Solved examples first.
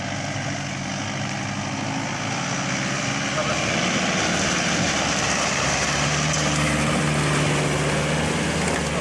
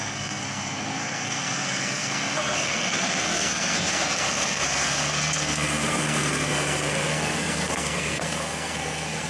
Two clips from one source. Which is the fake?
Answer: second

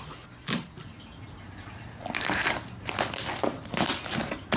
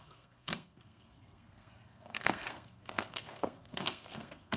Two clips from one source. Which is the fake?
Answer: second